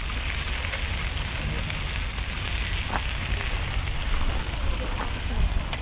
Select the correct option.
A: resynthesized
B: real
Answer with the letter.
B